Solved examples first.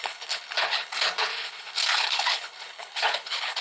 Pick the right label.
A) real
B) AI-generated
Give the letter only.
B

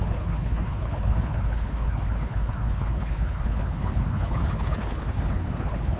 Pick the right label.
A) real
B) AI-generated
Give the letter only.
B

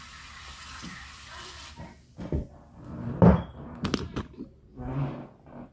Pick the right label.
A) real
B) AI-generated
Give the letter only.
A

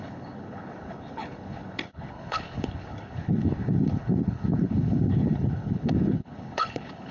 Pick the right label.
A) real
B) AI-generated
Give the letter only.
B